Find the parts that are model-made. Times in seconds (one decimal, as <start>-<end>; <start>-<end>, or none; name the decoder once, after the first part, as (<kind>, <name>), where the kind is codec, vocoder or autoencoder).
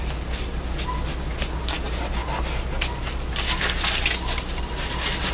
none